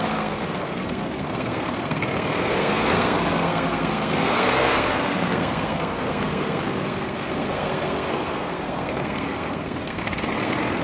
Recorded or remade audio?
remade